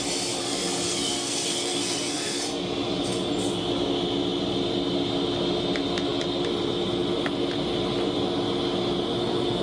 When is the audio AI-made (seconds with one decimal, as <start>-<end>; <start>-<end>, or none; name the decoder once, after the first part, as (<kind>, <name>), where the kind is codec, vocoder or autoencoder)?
0.4-2.4 (codec, SNAC)